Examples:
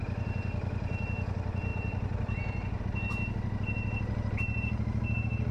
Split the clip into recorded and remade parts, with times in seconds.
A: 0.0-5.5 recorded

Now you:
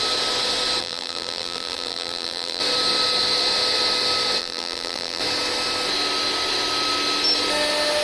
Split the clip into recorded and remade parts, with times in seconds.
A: 0.0-0.8 recorded; 0.8-2.6 remade; 2.6-4.4 recorded; 4.4-5.2 remade; 5.2-8.0 recorded

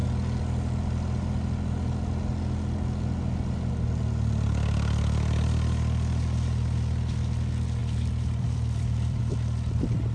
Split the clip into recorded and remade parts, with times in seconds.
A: 0.0-7.8 recorded; 7.8-9.2 remade; 9.2-10.1 recorded

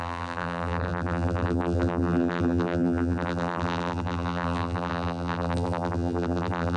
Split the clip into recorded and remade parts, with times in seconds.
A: 0.0-6.8 remade

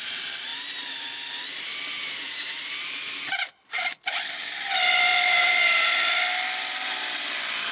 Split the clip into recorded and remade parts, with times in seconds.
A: 0.0-2.4 recorded; 2.4-3.1 remade; 3.1-5.1 recorded; 5.1-5.8 remade; 5.8-7.7 recorded

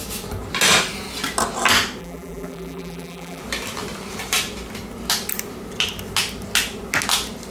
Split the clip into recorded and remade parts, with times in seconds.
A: 0.0-2.0 recorded; 2.0-3.4 remade; 3.4-7.5 recorded